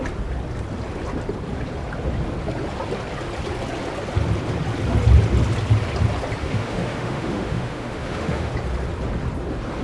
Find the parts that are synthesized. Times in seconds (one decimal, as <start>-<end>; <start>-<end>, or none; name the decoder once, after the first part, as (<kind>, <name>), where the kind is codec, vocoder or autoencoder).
6.4-8.5 (autoencoder, DAC-VAE)